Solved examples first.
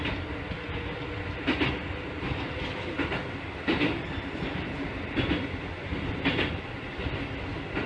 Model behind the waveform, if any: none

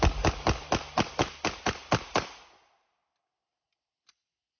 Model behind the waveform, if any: none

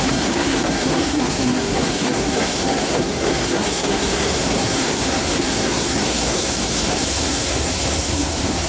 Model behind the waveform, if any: codec, SNAC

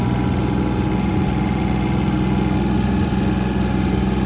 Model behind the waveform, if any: none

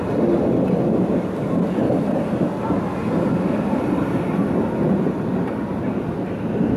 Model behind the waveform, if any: none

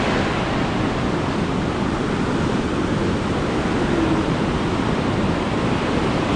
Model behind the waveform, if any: none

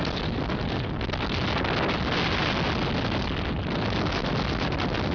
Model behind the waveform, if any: none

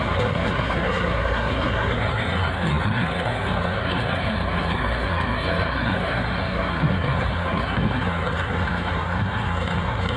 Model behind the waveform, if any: codec, SNAC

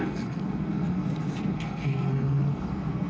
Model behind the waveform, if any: codec, SNAC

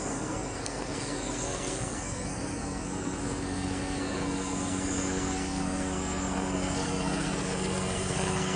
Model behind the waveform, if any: codec, SNAC